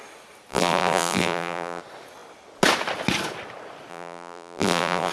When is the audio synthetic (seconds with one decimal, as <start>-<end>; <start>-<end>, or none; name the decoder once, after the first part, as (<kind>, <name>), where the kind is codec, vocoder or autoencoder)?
0.5-1.8 (vocoder, BigVGAN v2); 3.9-5.1